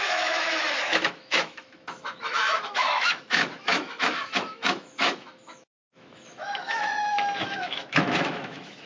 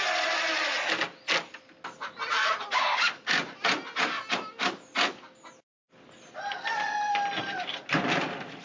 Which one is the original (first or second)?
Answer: second